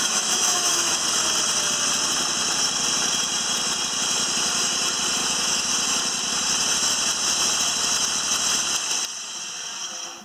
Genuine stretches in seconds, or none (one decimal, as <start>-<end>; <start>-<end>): 1.0-5.2; 5.7-10.2